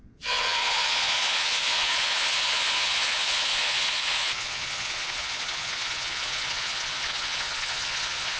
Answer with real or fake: fake